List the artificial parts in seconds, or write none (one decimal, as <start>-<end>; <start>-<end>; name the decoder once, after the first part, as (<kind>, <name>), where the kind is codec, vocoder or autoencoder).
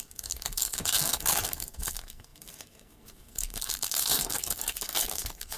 0.0-5.6 (codec, SNAC)